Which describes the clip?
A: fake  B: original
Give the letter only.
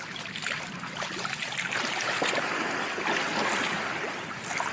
B